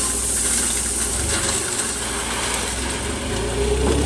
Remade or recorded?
recorded